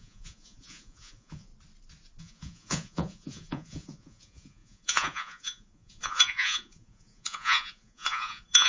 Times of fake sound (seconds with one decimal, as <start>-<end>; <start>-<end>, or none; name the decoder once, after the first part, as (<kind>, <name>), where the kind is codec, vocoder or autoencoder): 0.0-1.5 (vocoder, Vocos); 2.2-8.7